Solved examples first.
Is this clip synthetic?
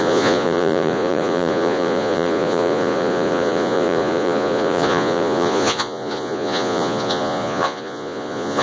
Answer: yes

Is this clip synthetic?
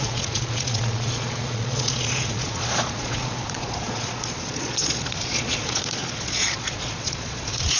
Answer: yes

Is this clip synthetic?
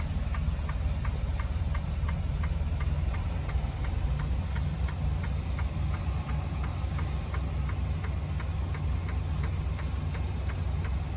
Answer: no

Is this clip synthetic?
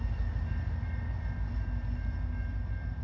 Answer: no